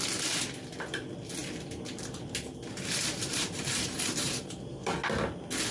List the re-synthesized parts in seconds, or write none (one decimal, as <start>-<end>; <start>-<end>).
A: 1.4-4.8